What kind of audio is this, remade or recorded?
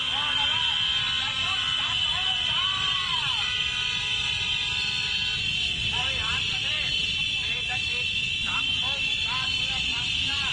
remade